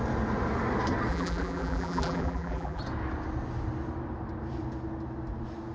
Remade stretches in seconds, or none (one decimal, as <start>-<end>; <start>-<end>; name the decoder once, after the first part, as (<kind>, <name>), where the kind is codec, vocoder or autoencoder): 1.1-2.8 (vocoder, BigVGAN v2)